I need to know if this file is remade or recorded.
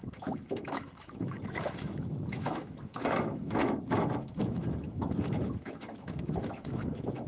remade